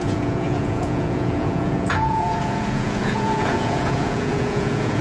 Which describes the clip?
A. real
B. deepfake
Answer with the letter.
B